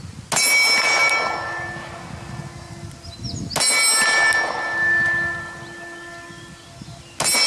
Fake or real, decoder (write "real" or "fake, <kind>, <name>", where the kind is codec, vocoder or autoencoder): real